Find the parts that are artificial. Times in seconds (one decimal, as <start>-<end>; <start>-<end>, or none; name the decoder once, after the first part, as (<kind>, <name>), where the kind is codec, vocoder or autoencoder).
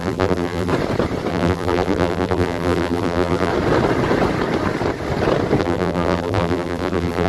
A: 0.0-0.7 (vocoder, BigVGAN v2); 1.3-3.5; 5.6-7.3